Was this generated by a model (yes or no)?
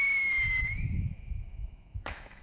yes